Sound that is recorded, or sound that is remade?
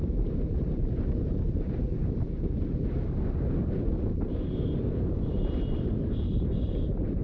remade